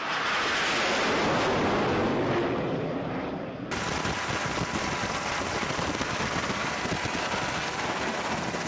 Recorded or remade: recorded